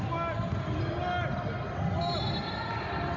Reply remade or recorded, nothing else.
recorded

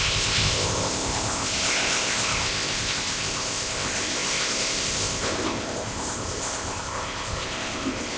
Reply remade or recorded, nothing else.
remade